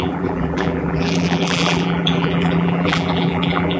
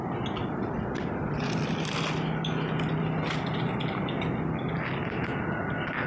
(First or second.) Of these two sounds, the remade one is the first